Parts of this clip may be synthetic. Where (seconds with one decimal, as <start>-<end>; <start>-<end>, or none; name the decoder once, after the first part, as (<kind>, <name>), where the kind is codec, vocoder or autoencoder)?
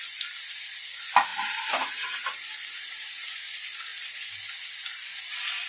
1.3-3.4 (vocoder, BigVGAN v2)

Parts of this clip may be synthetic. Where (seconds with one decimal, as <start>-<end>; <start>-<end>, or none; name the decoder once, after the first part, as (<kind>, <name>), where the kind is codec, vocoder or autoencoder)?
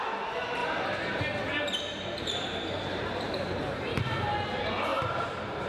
0.6-1.2 (vocoder, BigVGAN v2); 1.7-3.6; 4.9-5.7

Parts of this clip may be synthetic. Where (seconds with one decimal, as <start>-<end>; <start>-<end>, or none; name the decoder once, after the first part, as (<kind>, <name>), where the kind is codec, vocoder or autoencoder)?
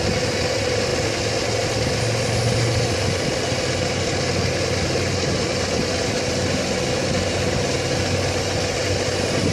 none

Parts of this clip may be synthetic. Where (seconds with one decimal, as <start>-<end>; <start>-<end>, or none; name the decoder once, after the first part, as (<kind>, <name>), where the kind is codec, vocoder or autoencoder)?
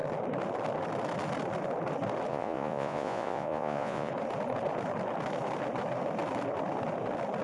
2.3-4.1 (vocoder, Vocos)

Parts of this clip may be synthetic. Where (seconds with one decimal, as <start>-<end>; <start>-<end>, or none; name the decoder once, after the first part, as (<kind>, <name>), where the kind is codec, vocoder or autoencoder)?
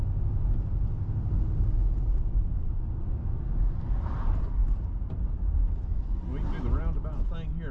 none